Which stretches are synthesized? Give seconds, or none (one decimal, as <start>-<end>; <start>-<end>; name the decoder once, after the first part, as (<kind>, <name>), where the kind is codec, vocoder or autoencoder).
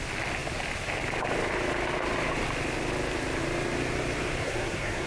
4.4-5.1 (codec, SNAC)